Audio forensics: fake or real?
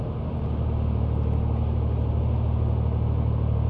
real